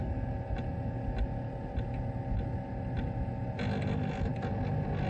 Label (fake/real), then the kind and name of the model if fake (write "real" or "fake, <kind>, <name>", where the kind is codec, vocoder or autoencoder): real